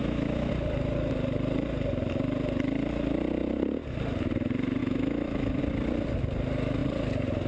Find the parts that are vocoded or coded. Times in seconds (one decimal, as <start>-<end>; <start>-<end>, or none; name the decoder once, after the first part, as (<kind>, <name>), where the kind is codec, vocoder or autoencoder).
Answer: 0.0-0.5 (autoencoder, DAC-VAE); 4.8-5.6